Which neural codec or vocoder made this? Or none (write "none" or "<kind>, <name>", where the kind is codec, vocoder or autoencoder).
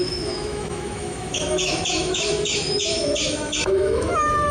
autoencoder, DAC-VAE